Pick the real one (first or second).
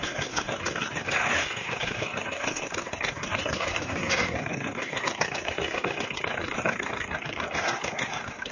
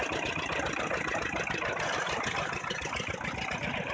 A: second